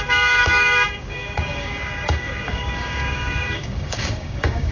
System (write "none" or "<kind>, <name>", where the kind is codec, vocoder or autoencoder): codec, DAC